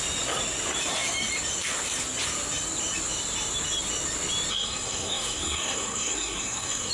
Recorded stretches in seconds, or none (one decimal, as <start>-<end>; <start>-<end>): 0.0-4.5